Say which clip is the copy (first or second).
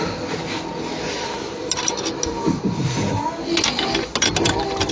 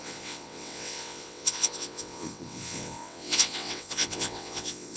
second